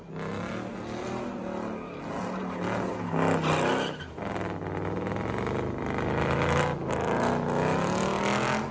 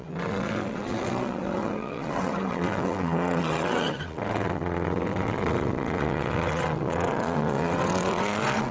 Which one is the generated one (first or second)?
second